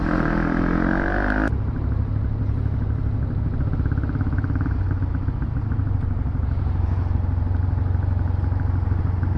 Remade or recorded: recorded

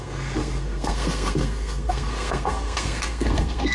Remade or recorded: remade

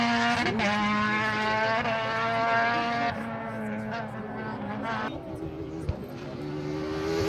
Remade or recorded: recorded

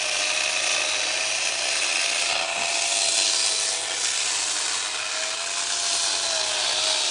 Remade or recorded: recorded